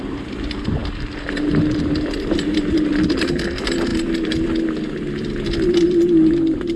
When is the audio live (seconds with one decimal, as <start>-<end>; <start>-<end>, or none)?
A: 3.9-6.8